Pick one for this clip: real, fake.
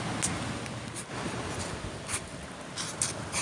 real